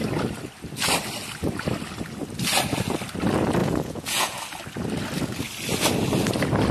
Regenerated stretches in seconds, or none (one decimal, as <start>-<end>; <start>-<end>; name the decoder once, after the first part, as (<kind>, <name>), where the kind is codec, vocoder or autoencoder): 3.6-4.4 (vocoder, Vocos)

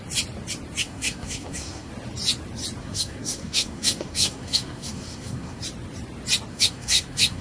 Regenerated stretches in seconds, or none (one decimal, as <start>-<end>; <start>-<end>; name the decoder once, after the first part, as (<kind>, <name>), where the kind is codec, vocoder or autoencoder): 0.8-1.9 (codec, SNAC); 2.8-5.6; 6.5-7.4

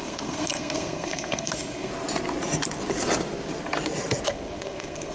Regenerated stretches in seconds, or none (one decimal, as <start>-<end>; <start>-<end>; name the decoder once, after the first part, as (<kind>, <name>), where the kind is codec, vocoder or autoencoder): 0.0-1.9 (codec, SNAC); 4.3-5.1

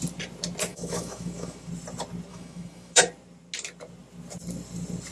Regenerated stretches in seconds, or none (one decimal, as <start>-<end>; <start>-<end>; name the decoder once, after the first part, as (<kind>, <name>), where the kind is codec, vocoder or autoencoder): 0.7-1.7 (autoencoder, DAC-VAE); 2.3-3.0

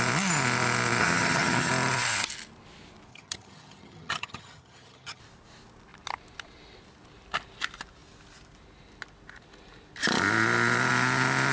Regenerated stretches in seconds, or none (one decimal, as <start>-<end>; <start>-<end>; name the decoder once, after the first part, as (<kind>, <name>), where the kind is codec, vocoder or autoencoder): 1.0-1.7 (vocoder, HiFi-GAN); 3.1-5.2

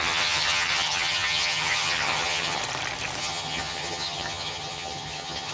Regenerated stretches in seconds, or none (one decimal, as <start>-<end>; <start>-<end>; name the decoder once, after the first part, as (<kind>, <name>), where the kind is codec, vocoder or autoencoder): 0.0-2.6 (vocoder, HiFi-GAN); 3.2-5.5

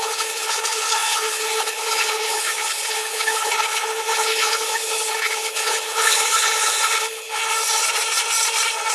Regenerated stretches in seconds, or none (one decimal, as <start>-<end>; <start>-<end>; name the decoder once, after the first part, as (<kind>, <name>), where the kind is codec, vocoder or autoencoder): 0.0-7.4 (codec, HILCodec)